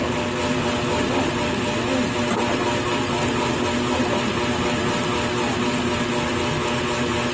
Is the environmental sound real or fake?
real